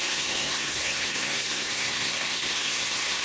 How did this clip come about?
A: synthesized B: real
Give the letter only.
A